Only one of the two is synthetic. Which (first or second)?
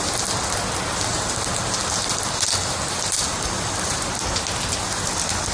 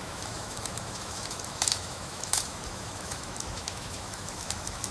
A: second